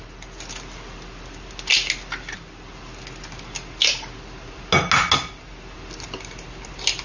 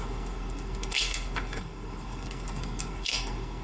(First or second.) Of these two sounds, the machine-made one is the second